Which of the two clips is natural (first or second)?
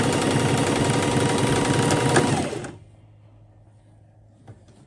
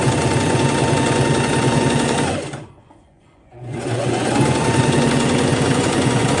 first